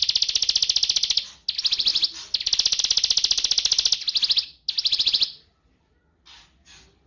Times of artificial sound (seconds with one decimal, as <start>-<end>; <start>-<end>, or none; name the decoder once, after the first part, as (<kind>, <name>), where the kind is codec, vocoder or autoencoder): none